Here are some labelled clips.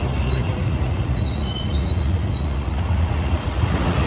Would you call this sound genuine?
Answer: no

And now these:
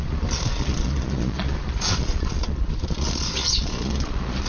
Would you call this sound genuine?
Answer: no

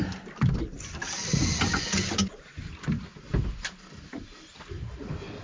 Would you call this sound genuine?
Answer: yes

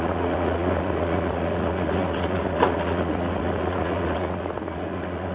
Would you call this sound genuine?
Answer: no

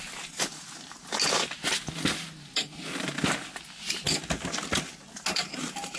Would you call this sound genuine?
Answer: yes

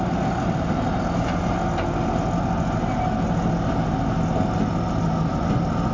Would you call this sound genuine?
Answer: yes